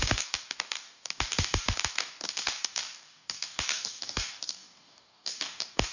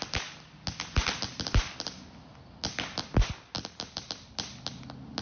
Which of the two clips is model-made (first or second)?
first